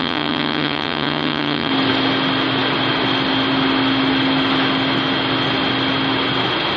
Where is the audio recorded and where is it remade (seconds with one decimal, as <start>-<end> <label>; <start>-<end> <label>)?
0.0-1.7 remade; 1.7-6.8 recorded